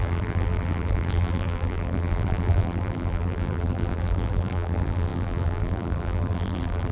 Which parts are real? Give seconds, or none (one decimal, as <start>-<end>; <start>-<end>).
none

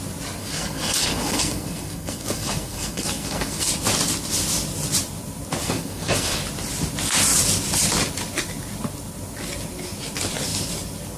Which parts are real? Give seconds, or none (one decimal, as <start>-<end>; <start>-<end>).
0.0-0.4; 3.7-5.6; 6.4-11.2

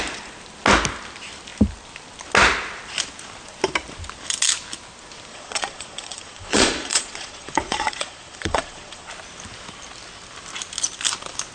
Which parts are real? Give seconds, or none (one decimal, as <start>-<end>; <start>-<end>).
0.0-5.3; 9.1-11.5

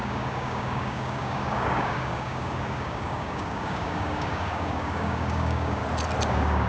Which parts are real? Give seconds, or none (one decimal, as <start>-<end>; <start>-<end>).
5.8-6.3

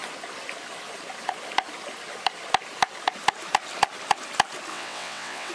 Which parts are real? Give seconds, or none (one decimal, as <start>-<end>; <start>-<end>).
0.0-4.7

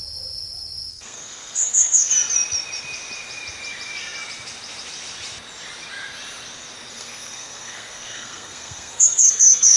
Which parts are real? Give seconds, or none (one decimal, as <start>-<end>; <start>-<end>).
0.0-0.9; 2.1-6.9